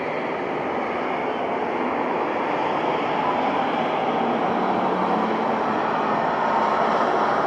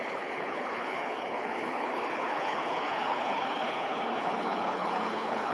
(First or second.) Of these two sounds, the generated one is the second